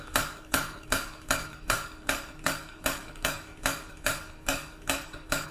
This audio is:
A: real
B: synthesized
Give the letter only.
B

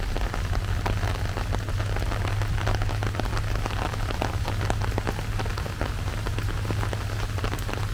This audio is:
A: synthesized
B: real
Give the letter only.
B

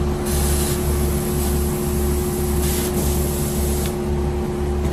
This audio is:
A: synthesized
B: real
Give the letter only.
B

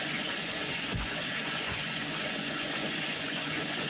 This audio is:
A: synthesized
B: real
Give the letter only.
A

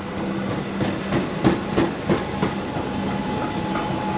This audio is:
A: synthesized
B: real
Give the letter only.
B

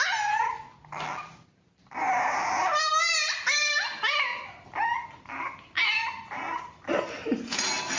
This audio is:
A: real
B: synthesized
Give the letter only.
A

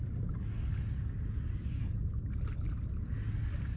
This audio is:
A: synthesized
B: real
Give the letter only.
B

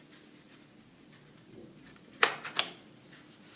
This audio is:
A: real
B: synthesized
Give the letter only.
A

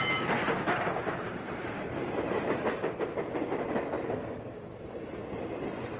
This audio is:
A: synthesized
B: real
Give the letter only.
B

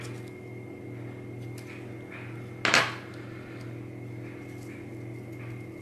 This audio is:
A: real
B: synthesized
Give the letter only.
A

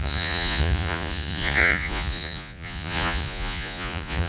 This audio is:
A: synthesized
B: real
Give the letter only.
A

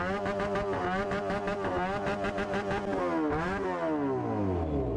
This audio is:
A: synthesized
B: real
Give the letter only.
B